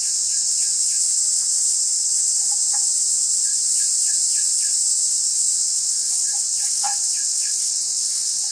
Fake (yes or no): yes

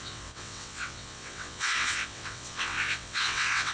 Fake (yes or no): yes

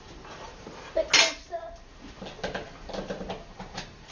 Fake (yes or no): no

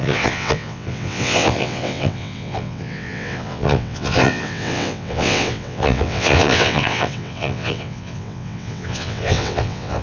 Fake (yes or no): yes